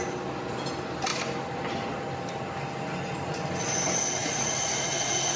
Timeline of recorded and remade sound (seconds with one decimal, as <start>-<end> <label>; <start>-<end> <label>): 0.0-4.2 recorded; 4.2-5.4 remade